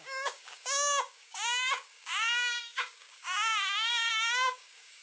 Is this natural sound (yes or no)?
no